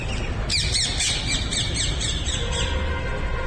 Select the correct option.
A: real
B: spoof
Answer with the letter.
A